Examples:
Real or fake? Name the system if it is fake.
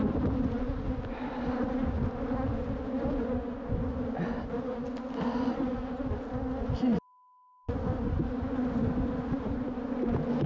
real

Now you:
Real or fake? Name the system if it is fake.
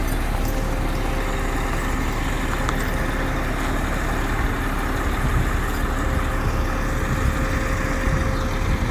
real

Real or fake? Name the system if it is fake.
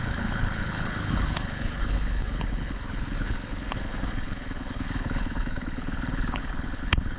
fake, codec, HILCodec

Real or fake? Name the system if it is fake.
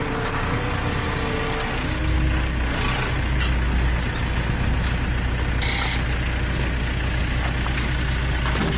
real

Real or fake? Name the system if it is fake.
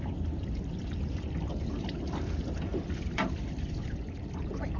fake, vocoder, BigVGAN v2